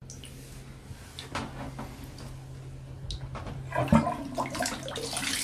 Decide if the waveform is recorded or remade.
recorded